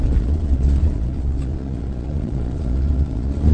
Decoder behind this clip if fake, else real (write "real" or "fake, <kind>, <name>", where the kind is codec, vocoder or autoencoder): fake, vocoder, Vocos